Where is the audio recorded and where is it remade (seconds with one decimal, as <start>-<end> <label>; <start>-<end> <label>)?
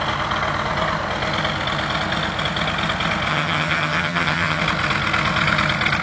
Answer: 0.0-3.3 recorded; 3.3-4.6 remade; 4.6-6.0 recorded